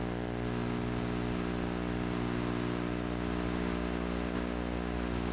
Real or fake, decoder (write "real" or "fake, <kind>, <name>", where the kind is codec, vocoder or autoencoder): real